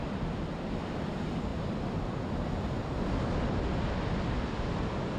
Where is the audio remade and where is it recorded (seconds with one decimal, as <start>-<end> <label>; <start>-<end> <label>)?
0.0-5.2 recorded